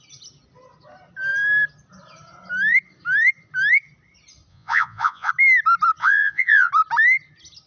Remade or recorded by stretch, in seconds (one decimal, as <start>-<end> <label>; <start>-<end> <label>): 0.0-4.5 recorded; 4.5-5.3 remade; 5.3-6.0 recorded; 6.0-6.7 remade; 6.7-7.7 recorded